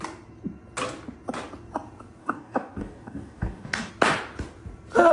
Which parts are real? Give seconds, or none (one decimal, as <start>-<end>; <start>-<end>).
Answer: 0.0-2.2; 3.9-5.1